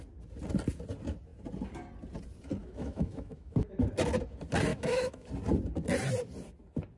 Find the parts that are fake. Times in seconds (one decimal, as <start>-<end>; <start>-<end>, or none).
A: 2.6-3.7; 4.7-5.3